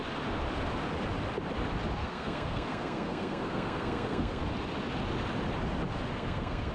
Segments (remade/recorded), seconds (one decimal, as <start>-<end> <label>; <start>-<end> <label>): 0.0-2.0 recorded; 2.0-4.4 remade; 4.4-6.1 recorded; 6.1-6.7 remade